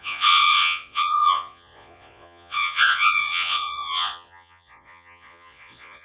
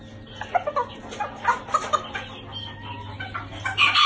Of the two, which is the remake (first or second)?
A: first